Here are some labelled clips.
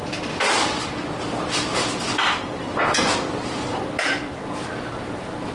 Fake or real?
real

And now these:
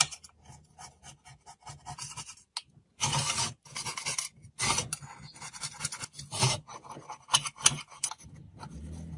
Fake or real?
real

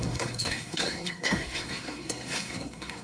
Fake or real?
fake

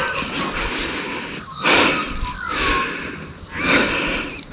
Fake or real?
real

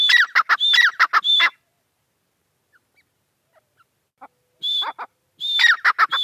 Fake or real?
real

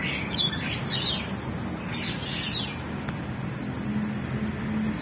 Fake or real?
real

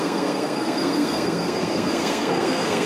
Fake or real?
fake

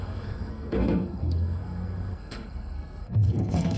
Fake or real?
fake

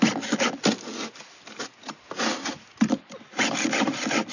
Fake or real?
real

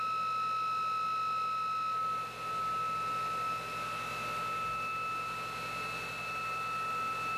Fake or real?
real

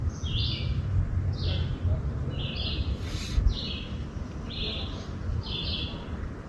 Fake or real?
real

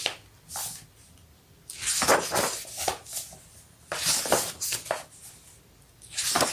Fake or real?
real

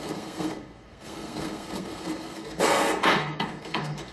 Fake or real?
fake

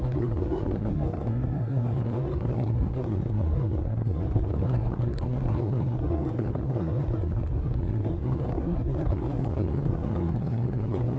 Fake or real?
fake